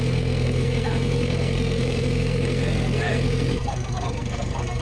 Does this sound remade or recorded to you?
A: remade